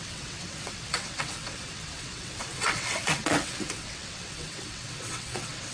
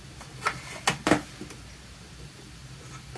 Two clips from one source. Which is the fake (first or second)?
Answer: first